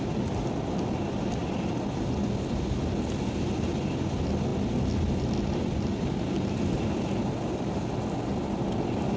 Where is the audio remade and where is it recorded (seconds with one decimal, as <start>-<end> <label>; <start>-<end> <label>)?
0.0-9.2 recorded